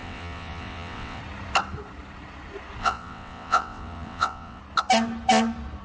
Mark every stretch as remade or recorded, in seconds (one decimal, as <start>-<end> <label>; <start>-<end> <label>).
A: 0.0-1.2 remade; 1.2-2.8 recorded; 2.8-4.6 remade; 4.6-5.8 recorded